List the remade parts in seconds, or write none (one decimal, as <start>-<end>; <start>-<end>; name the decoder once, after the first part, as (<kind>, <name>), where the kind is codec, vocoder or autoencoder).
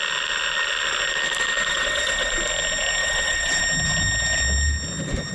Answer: 1.7-2.3 (vocoder, WaveNeXt); 3.0-3.6